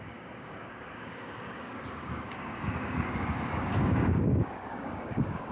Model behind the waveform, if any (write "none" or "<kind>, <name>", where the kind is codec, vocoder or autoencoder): codec, DAC